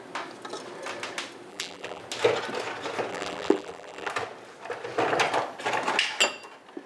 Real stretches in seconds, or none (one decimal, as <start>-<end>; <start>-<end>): 0.0-1.5; 2.0-3.1; 4.1-6.9